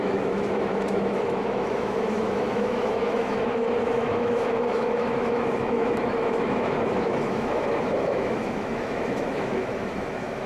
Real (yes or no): no